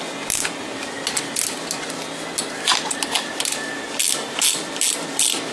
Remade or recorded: recorded